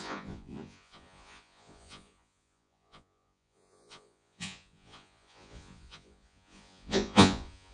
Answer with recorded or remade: remade